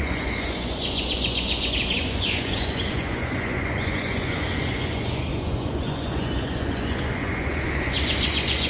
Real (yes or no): no